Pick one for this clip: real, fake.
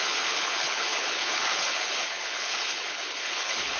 fake